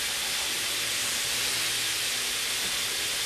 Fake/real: real